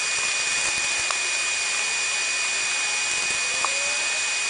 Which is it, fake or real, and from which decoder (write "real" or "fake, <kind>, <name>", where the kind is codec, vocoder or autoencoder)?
real